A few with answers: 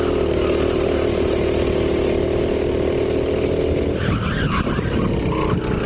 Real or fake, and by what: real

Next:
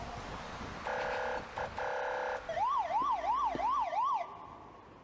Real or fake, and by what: real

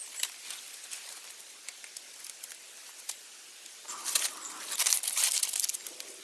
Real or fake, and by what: real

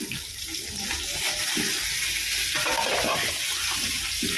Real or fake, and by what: real